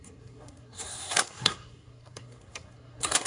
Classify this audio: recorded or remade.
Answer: remade